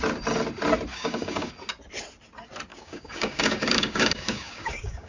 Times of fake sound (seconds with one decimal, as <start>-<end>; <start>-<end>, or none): 0.9-1.5; 2.7-5.1